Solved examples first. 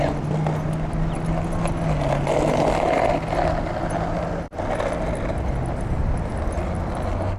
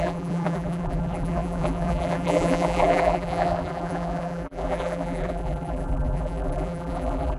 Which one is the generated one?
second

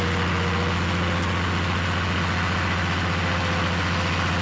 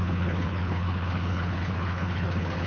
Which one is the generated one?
second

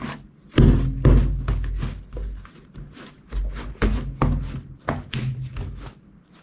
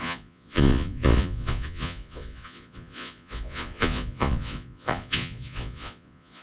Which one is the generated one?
second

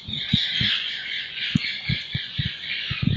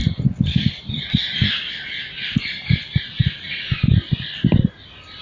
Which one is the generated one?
first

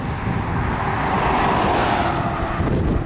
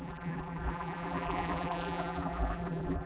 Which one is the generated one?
second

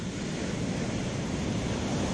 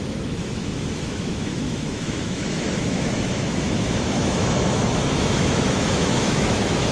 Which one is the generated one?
second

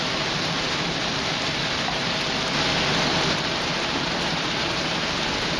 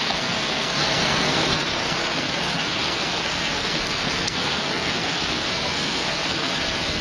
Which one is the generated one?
second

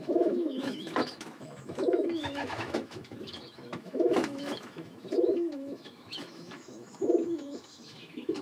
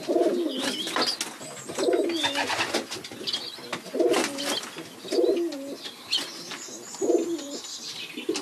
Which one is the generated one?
first